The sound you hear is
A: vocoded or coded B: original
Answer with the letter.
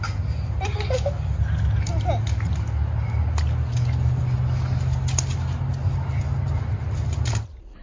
B